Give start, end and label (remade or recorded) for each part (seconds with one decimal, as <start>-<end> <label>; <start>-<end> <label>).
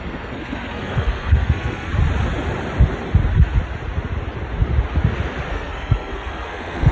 0.0-1.9 remade; 1.9-5.5 recorded; 5.5-6.9 remade